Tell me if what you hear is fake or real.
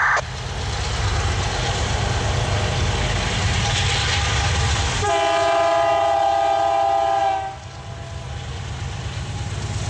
real